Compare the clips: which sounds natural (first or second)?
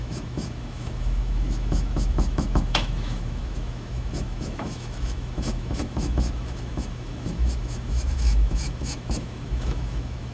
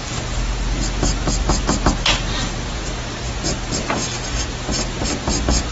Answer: second